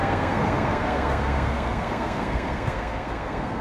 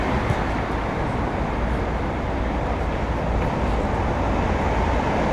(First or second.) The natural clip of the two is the second